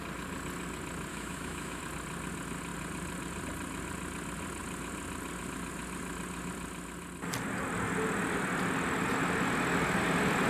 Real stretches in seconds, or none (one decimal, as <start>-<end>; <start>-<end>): 0.0-1.1; 1.8-10.5